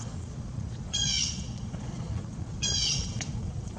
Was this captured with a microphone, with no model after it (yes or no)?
no